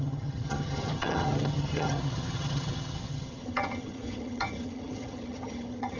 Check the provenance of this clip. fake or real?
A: fake